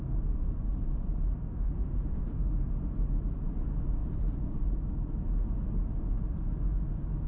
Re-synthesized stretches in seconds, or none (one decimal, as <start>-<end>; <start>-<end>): 1.4-2.7

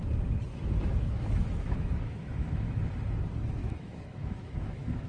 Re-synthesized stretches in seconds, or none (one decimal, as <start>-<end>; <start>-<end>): 0.5-2.8; 3.6-5.1

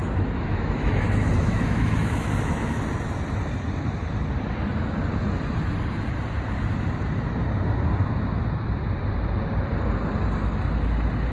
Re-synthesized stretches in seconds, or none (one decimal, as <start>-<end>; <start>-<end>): 0.0-2.8

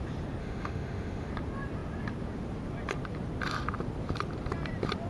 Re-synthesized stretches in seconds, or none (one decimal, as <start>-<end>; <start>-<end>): 0.4-1.3